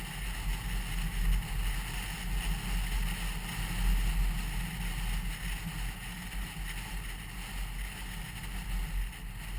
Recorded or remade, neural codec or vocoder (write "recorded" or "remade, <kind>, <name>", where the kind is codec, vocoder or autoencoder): recorded